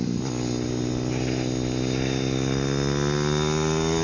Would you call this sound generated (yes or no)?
no